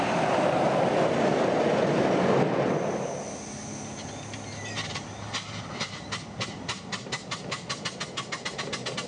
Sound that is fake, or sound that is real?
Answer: real